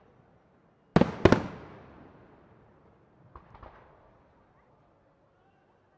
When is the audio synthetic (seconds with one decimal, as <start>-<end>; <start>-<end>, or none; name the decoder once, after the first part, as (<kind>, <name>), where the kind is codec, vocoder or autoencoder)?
none